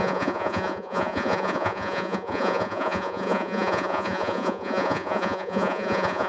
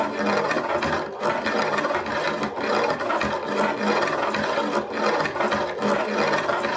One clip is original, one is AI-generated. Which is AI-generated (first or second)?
first